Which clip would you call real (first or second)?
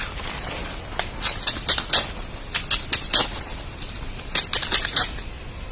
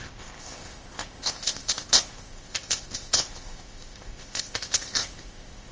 first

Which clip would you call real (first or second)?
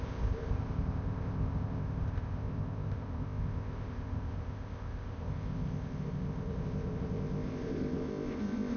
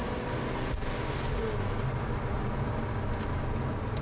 second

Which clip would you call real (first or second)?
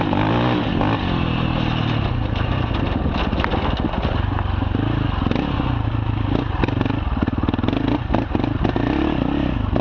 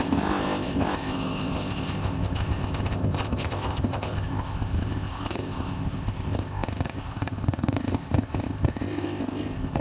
first